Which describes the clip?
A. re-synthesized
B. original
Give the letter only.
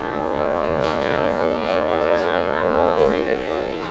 A